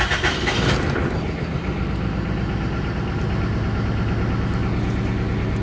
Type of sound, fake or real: real